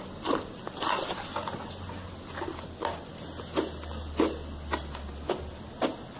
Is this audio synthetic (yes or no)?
no